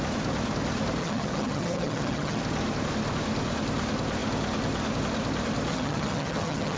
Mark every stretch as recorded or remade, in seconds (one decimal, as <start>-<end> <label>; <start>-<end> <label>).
0.0-1.0 recorded; 1.0-2.4 remade; 2.4-5.7 recorded; 5.7-6.8 remade